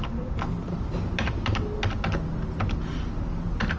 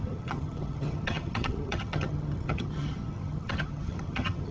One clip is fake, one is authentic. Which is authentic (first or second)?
first